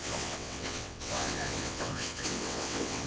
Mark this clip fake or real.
fake